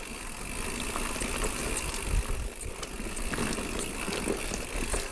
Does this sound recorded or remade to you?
recorded